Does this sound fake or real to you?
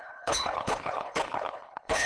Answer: fake